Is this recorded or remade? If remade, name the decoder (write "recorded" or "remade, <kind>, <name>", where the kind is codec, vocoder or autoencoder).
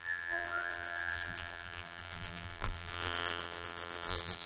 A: remade, vocoder, BigVGAN v2